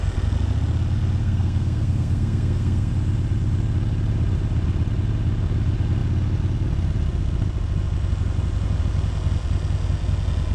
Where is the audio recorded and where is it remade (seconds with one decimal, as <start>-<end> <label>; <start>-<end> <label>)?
0.0-1.2 recorded; 1.2-2.9 remade; 2.9-10.5 recorded